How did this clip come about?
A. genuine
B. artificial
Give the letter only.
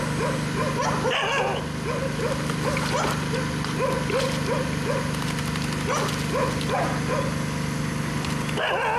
A